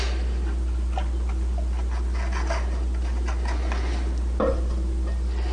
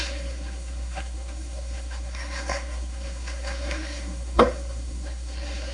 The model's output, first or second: second